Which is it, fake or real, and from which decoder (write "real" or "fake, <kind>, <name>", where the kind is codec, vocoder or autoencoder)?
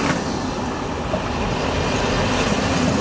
real